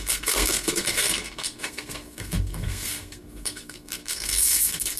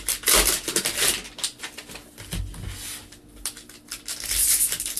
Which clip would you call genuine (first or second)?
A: second